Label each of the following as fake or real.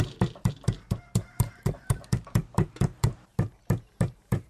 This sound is fake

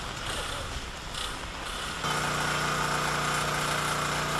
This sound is real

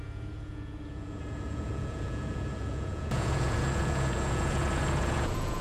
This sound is fake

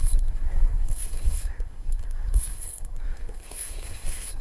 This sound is fake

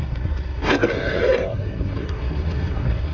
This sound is fake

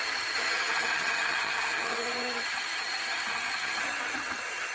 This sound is fake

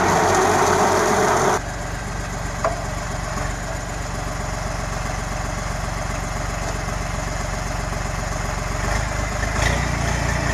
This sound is real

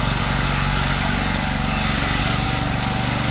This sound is fake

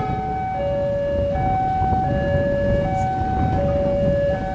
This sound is real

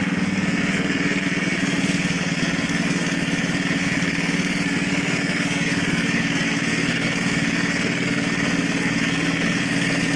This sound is fake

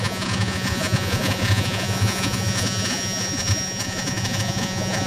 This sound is fake